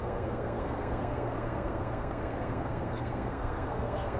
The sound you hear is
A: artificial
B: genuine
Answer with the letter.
A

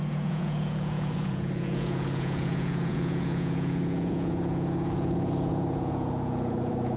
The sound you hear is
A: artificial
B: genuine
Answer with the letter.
A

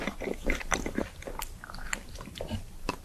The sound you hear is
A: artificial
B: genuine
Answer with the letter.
B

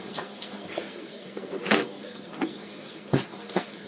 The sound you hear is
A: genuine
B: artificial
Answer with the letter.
B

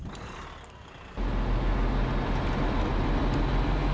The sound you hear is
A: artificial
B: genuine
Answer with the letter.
B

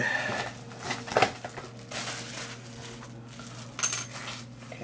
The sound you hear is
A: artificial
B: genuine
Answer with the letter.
B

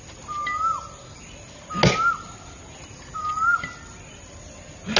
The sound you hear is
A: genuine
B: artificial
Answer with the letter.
A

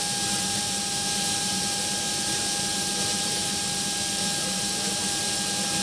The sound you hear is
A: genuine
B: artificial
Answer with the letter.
B